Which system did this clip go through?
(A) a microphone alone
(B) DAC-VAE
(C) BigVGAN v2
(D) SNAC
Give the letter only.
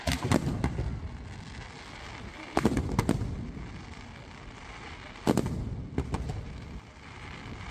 A